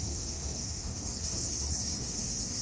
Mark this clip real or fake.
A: fake